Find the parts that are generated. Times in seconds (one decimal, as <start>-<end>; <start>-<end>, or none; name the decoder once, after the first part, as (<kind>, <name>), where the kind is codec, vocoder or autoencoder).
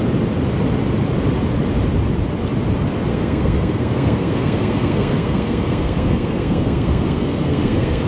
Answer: 3.1-8.1 (codec, SNAC)